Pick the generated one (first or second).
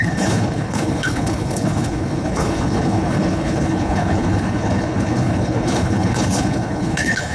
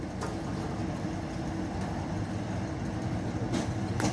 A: first